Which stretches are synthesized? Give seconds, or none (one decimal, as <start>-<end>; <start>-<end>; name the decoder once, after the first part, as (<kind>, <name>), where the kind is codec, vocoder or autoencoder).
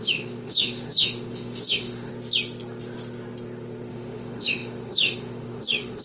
0.0-2.1 (autoencoder, DAC-VAE); 3.9-6.0